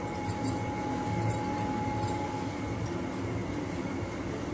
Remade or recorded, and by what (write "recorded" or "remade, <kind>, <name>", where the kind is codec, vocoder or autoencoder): recorded